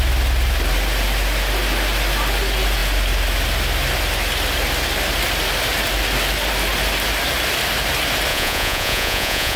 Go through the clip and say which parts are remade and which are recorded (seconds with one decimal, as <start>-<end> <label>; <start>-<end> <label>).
0.0-8.3 recorded; 8.3-9.6 remade